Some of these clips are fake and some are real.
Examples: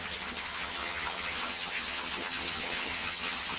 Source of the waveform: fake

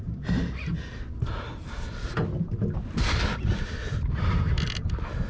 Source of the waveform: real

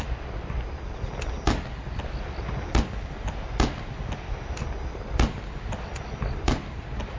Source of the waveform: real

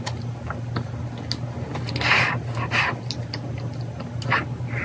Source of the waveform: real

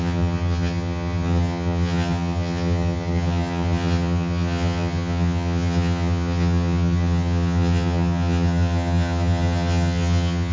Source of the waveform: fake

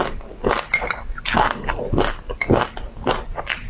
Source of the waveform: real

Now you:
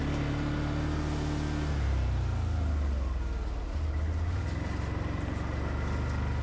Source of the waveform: real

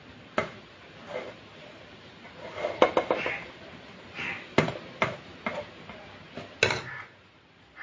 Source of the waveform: real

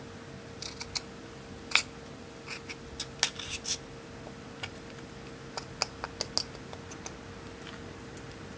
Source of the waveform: real